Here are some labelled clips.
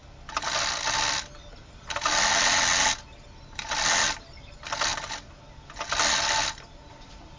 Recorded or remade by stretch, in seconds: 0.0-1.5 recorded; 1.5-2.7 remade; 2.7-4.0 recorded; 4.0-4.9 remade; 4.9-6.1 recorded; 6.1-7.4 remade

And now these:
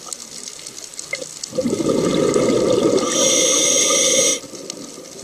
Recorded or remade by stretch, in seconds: 0.0-5.2 recorded